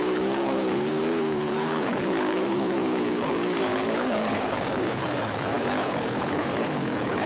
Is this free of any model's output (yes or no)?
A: no